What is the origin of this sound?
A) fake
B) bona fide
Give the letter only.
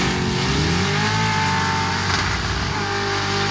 B